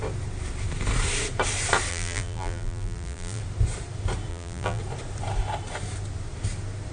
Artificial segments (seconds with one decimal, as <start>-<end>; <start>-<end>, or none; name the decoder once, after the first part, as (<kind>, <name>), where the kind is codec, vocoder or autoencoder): 1.9-3.4 (vocoder, BigVGAN v2); 4.3-4.8